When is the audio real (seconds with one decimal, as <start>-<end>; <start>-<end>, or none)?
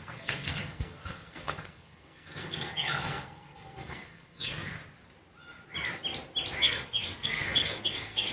4.8-6.6